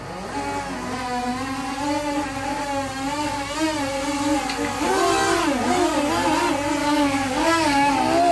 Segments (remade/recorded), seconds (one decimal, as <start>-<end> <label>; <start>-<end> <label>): 0.0-6.8 recorded; 6.8-7.9 remade; 7.9-8.3 recorded